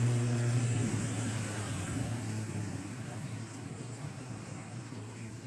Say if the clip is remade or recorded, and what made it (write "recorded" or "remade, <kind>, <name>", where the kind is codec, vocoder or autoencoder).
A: remade, codec, SNAC